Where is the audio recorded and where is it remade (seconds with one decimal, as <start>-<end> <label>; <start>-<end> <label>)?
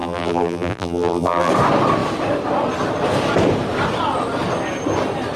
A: 0.0-1.5 remade; 1.5-5.4 recorded